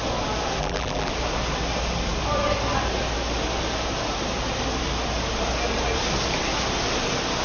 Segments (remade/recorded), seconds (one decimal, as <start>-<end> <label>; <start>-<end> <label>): 0.0-0.6 recorded; 0.6-1.1 remade; 1.1-7.4 recorded